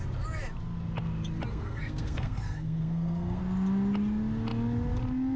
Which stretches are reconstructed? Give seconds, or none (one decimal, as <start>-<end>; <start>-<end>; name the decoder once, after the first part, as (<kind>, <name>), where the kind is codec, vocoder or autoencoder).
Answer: 1.5-3.4 (codec, SNAC)